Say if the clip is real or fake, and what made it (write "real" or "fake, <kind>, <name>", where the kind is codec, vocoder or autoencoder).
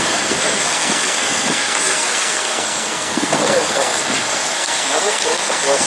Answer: fake, codec, SNAC